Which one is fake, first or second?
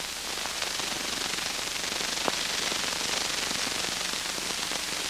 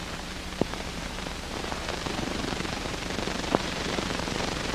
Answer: second